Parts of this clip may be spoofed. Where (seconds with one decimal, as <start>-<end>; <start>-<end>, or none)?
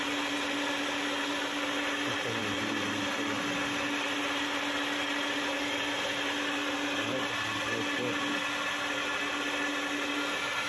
none